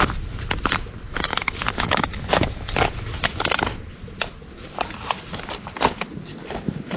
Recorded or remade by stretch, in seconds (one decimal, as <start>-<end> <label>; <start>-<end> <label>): 0.0-1.3 recorded; 1.3-2.7 remade; 2.7-7.0 recorded